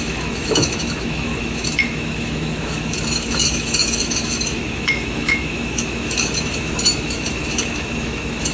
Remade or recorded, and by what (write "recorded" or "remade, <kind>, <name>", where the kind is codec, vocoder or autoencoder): remade, autoencoder, DAC-VAE